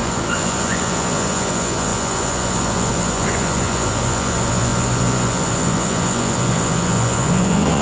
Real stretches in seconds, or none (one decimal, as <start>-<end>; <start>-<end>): none